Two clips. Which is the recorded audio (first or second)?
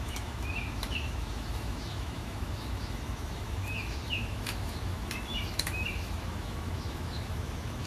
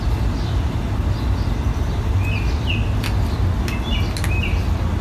second